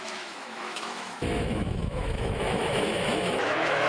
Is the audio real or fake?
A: fake